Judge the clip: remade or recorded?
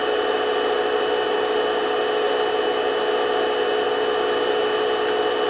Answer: recorded